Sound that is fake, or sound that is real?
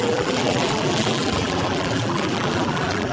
fake